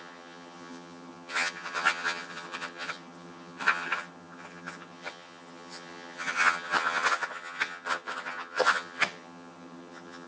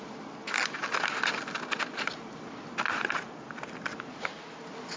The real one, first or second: second